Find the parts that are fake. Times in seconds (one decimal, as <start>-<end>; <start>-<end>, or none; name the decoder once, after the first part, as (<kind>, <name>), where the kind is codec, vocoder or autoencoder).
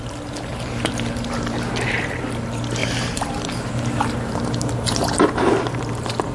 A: 0.5-2.2 (vocoder, BigVGAN v2); 2.8-5.8